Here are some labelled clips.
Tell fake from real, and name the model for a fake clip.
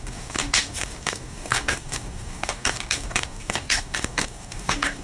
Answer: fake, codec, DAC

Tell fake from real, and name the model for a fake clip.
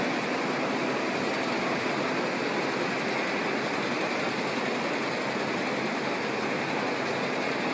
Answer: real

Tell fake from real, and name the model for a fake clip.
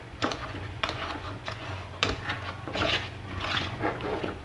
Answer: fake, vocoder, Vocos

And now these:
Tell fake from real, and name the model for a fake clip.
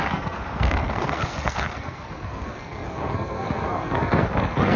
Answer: fake, codec, SNAC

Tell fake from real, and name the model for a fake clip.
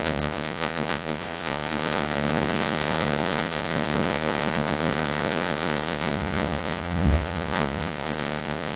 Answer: fake, vocoder, Vocos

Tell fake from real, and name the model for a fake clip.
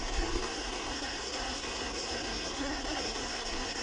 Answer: fake, codec, SNAC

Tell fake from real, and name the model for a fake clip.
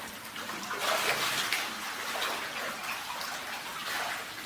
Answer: real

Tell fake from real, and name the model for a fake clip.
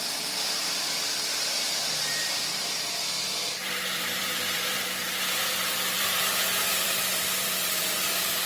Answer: fake, vocoder, BigVGAN v2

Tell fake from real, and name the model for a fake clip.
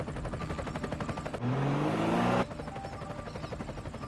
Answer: real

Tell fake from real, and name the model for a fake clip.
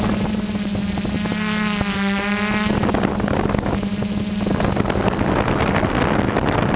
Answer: real